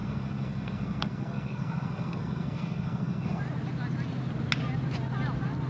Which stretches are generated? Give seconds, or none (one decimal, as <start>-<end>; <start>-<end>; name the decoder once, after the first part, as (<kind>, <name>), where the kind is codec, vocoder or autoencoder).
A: 0.0-3.4 (codec, SNAC)